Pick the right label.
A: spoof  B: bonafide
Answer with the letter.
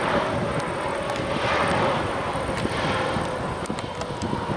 B